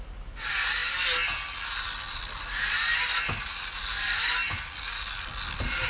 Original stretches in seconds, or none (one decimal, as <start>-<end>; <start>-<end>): 0.0-5.9

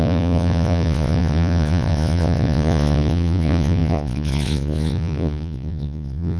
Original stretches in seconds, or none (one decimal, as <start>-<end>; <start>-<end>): none

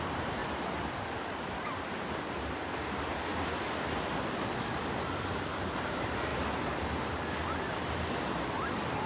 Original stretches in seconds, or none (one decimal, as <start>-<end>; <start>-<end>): 0.0-9.1

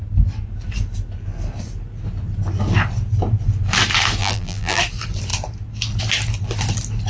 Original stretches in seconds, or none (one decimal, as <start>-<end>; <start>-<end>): 0.0-4.2; 4.8-7.1

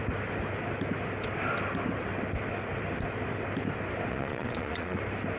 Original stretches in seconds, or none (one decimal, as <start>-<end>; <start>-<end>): 0.0-4.1; 5.0-5.4

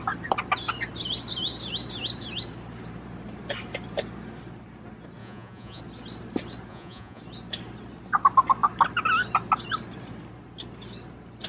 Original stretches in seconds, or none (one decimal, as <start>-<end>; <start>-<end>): 0.0-5.2; 5.8-6.7; 7.2-11.5

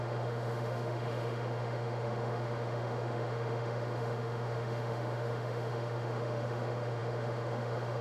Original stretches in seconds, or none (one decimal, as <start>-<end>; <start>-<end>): none

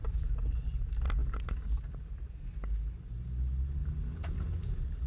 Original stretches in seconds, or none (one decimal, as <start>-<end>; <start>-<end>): 0.0-5.1